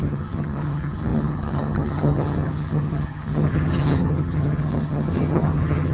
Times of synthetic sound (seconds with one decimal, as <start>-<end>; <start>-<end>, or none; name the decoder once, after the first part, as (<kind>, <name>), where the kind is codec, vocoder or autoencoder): 0.0-5.9 (vocoder, HiFi-GAN)